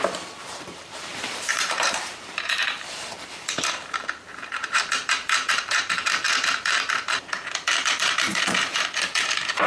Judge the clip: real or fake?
fake